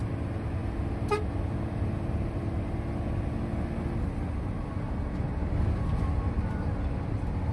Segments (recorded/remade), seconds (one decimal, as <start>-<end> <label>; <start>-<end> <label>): 0.0-7.5 recorded